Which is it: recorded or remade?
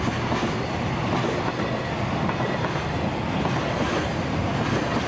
recorded